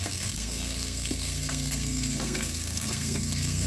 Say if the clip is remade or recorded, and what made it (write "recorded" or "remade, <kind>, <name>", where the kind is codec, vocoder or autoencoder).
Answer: remade, codec, SNAC